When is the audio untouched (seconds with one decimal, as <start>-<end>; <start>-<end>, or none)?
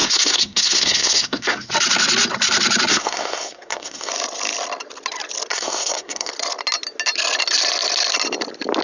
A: 1.7-2.9; 4.1-5.5; 6.3-8.8